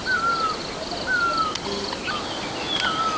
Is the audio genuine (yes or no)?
yes